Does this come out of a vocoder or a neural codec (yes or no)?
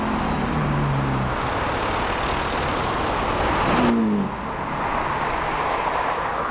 no